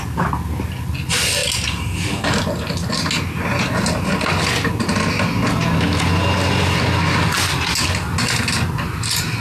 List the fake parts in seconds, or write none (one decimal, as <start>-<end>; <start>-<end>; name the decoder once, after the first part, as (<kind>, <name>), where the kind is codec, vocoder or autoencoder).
none